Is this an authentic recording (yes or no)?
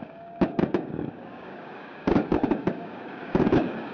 no